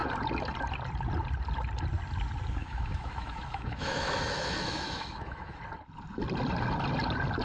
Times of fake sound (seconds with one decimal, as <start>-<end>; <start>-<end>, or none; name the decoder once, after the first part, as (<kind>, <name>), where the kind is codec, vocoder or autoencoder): 2.6-5.6 (autoencoder, DAC-VAE)